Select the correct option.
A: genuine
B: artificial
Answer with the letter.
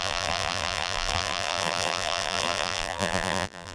B